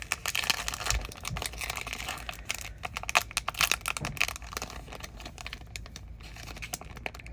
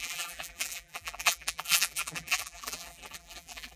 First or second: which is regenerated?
second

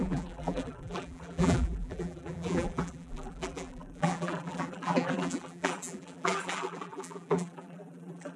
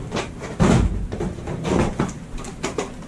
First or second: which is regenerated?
first